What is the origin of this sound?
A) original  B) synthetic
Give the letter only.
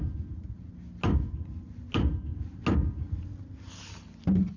A